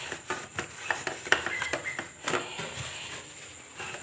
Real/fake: real